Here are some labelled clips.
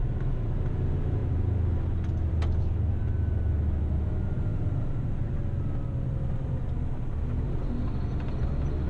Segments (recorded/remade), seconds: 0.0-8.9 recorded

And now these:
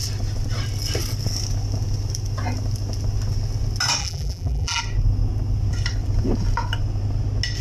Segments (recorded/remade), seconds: 0.0-4.0 recorded; 4.0-4.8 remade; 4.8-7.6 recorded

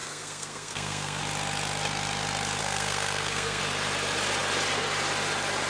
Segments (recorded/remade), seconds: 0.0-1.2 remade; 1.2-2.6 recorded; 2.6-3.6 remade; 3.6-5.7 recorded